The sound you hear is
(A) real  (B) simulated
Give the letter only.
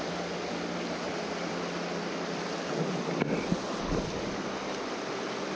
A